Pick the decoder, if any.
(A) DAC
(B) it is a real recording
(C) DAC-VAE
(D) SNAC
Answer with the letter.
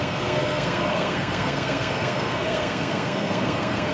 D